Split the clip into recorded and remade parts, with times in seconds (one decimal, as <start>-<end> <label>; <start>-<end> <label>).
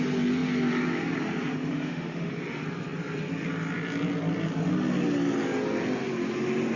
0.0-1.7 recorded; 1.7-2.3 remade; 2.3-6.8 recorded